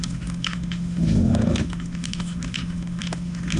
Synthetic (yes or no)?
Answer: yes